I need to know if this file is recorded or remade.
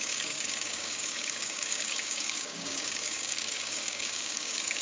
remade